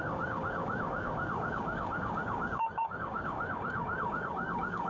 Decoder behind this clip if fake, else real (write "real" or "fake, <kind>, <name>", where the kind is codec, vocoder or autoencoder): fake, codec, DAC